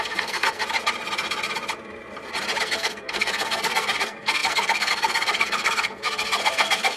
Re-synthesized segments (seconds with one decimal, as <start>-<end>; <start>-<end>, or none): 0.0-0.6; 2.6-7.0